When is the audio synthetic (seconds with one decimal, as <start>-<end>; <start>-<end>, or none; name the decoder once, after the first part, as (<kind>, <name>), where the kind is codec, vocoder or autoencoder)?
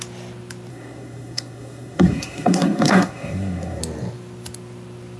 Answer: 0.7-3.8 (codec, SNAC)